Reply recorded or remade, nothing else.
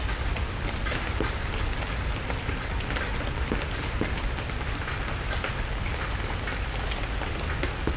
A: recorded